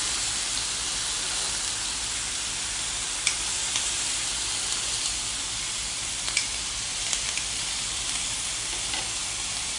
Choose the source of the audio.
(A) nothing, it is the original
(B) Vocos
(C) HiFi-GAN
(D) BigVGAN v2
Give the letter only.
D